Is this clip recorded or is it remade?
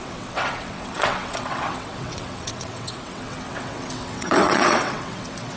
remade